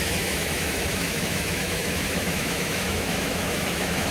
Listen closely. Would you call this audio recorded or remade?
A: remade